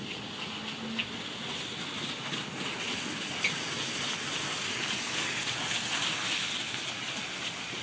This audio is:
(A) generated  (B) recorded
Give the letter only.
B